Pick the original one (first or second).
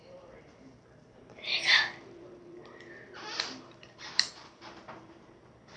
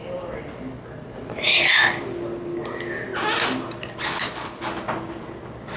second